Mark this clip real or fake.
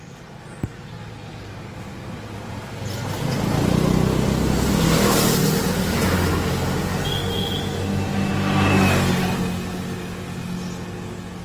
real